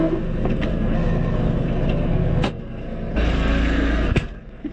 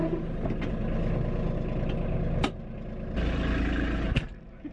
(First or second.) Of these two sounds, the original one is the second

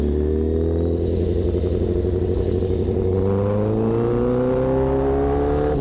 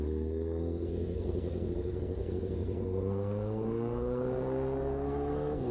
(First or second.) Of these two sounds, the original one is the first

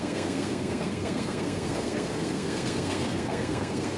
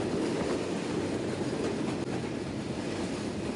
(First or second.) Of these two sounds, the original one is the second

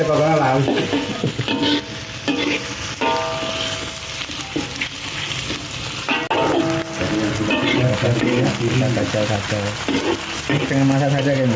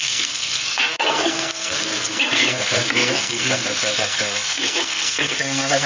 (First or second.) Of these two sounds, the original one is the first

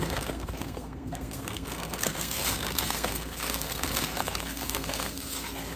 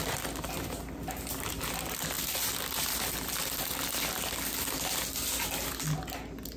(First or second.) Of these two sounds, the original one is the second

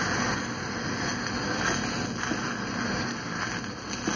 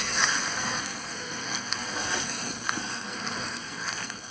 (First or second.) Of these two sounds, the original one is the first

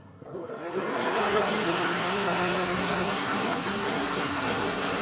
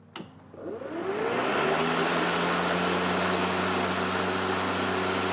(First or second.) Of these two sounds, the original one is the second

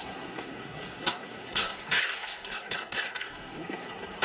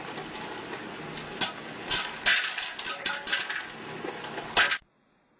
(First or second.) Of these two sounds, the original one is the second